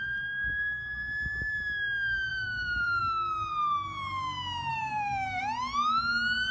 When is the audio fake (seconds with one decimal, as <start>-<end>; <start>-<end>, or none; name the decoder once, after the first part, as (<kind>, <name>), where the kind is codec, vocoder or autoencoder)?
2.3-3.0 (vocoder, BigVGAN v2); 4.7-5.4